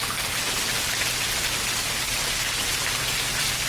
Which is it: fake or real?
real